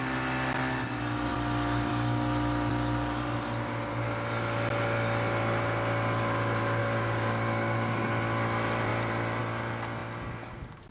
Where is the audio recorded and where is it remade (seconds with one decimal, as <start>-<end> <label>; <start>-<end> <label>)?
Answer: 0.0-6.8 recorded; 6.8-8.1 remade; 8.1-10.9 recorded